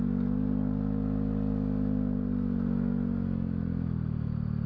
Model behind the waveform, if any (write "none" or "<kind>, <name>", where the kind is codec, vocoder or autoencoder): none